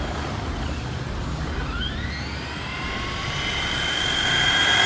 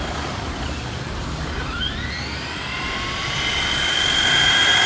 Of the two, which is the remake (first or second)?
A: second